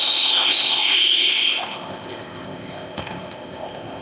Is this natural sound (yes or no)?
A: no